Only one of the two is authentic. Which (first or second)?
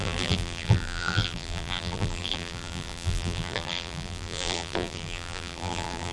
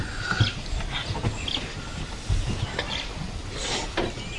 second